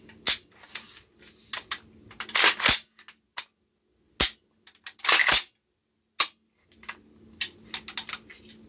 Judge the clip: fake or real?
real